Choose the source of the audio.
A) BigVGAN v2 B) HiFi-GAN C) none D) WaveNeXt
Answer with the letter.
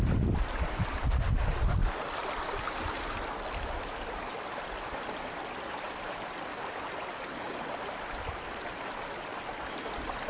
C